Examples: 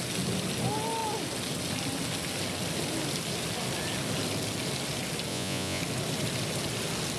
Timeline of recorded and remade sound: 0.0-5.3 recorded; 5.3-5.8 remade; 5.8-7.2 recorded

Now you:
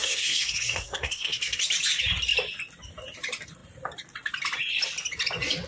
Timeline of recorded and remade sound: 0.0-1.6 remade; 1.6-5.7 recorded

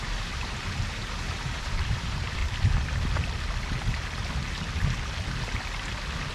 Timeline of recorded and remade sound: 0.0-2.4 remade; 2.4-6.3 recorded

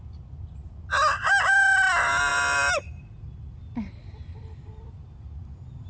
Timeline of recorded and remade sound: 0.0-5.9 recorded

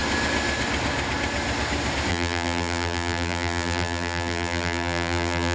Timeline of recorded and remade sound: 0.0-2.1 recorded; 2.1-5.5 remade

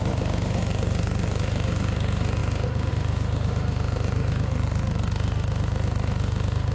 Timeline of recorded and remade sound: 0.0-6.7 remade

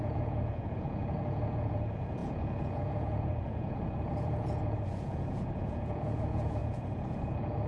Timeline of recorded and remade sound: 0.0-7.7 remade

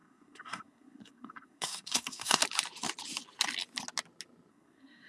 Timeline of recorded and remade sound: 0.0-2.4 remade; 2.4-4.5 recorded; 4.5-5.1 remade